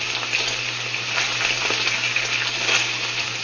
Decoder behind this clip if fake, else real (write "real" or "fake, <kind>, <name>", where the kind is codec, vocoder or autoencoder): real